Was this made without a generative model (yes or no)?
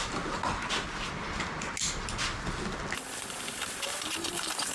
yes